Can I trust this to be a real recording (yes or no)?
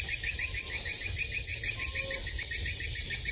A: yes